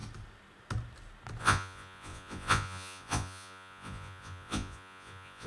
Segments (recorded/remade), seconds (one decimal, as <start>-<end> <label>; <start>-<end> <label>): 0.0-1.4 recorded; 1.4-5.5 remade